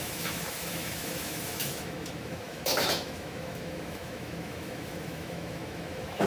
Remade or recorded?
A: remade